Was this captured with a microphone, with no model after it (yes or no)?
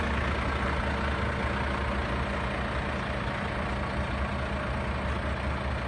yes